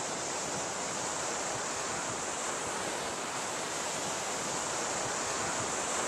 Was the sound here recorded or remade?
recorded